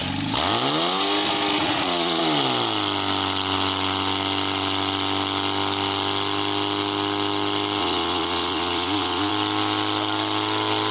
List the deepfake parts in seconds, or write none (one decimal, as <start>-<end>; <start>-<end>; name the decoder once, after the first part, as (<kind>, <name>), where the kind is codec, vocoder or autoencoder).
1.6-2.2 (vocoder, Vocos); 7.8-9.3